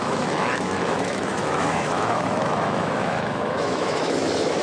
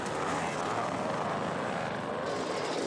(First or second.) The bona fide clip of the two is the second